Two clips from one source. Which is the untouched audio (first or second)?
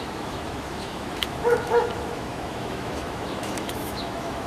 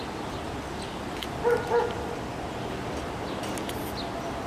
second